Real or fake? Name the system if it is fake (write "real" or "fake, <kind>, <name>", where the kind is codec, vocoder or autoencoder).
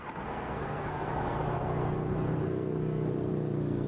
fake, codec, SNAC